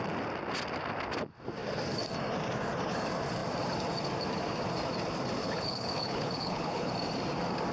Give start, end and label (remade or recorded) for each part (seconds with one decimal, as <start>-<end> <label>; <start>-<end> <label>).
0.0-5.4 recorded; 5.4-6.9 remade; 6.9-7.7 recorded